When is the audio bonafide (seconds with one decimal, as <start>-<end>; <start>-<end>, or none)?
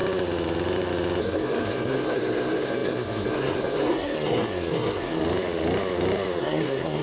0.0-1.2; 5.2-6.4